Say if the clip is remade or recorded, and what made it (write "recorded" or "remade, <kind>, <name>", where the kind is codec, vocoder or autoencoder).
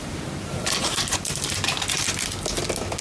recorded